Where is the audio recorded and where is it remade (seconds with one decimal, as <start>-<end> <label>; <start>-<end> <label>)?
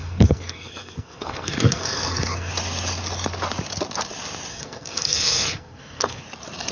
0.0-2.5 remade; 2.5-4.5 recorded; 4.5-6.2 remade; 6.2-6.7 recorded